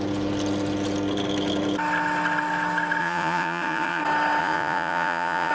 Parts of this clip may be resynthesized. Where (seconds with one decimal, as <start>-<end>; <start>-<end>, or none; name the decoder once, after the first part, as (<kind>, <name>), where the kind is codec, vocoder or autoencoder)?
3.0-4.0 (vocoder, Vocos); 4.4-5.5